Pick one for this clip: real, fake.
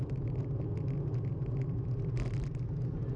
real